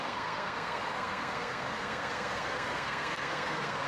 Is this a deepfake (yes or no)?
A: yes